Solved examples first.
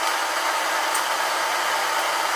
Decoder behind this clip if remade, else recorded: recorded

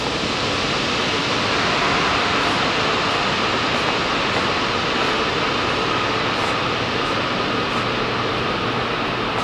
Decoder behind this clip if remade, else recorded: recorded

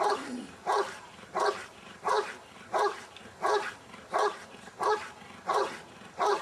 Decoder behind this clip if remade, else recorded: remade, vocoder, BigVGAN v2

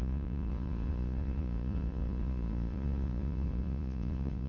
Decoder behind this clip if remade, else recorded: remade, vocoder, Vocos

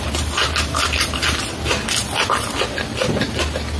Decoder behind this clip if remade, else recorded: recorded